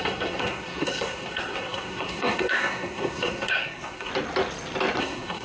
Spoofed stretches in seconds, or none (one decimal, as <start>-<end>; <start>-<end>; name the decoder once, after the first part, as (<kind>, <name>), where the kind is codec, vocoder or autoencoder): 0.0-4.1 (codec, SNAC); 5.0-5.4